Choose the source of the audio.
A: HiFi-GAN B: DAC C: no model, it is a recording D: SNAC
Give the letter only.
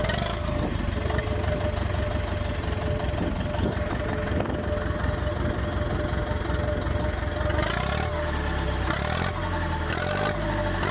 C